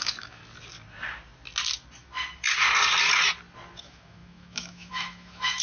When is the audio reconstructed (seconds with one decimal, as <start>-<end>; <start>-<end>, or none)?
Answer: 0.0-0.4; 3.8-5.6

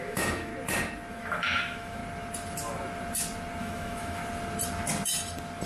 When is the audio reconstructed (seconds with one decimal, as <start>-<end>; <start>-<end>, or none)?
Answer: 0.0-0.5; 1.1-2.0; 3.6-4.2

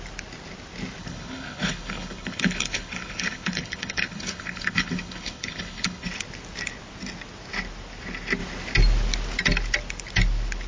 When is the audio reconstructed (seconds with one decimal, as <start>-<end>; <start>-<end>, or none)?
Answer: 1.0-6.1

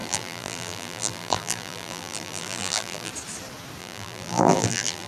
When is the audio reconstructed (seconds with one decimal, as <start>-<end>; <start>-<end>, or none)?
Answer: 0.0-3.1; 3.8-5.1

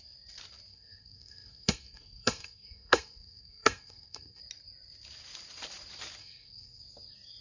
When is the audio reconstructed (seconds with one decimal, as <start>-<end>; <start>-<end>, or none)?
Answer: 0.7-4.4; 6.2-6.8